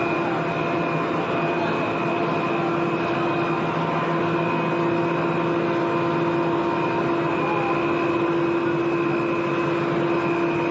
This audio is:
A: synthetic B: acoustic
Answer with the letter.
B